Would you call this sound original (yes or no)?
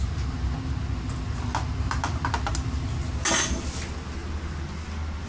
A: yes